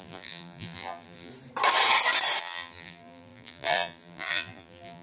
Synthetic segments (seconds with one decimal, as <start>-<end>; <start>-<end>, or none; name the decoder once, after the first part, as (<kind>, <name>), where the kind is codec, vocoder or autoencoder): 0.0-1.3 (vocoder, BigVGAN v2); 2.4-5.0